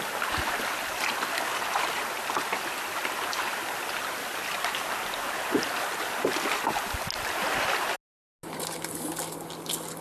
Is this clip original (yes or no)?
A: yes